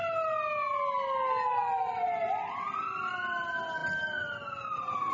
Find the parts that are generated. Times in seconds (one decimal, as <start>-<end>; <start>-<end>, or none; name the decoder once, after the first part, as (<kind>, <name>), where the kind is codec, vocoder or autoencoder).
none

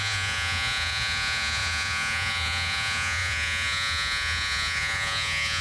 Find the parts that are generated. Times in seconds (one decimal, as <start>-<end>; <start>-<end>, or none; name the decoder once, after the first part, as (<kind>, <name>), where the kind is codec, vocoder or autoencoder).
0.0-5.6 (vocoder, Vocos)

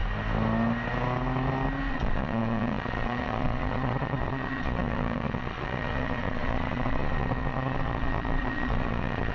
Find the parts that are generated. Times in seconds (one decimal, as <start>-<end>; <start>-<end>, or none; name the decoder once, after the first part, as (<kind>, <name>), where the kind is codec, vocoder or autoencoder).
1.9-9.3 (vocoder, Vocos)

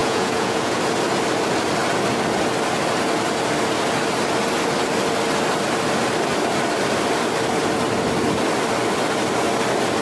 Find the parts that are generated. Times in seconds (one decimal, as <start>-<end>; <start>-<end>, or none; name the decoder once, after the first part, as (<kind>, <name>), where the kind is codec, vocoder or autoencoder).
0.0-0.8 (vocoder, Vocos)

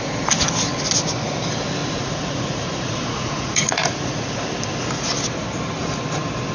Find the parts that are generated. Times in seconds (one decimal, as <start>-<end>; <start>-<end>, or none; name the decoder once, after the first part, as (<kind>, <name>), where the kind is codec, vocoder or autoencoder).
1.8-4.3 (vocoder, Vocos)

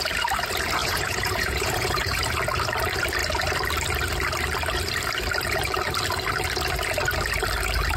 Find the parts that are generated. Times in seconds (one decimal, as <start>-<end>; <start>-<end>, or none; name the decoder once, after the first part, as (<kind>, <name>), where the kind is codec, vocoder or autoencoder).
0.8-2.2 (vocoder, Vocos)

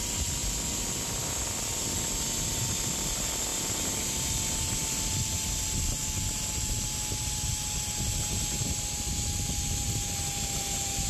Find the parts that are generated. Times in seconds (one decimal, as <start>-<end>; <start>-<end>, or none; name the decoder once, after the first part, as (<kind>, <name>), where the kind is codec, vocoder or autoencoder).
none